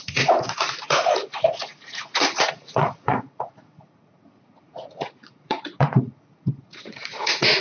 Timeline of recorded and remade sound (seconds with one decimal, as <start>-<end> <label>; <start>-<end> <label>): 0.0-7.6 remade